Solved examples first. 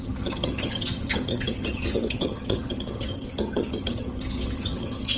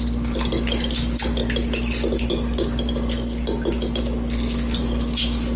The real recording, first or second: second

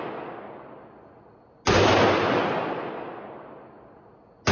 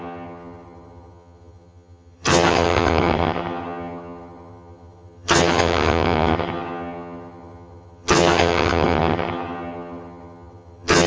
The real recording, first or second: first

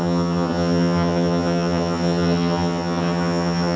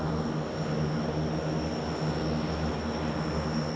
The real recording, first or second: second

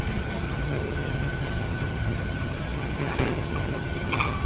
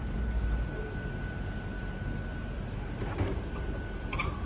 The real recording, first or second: second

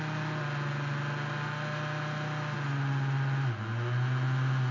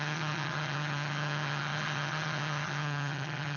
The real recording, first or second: first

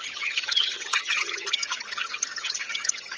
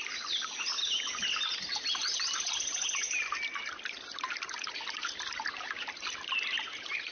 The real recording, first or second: second